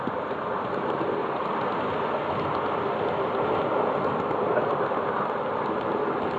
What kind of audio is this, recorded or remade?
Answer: recorded